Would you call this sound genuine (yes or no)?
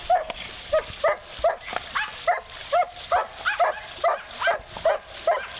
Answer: yes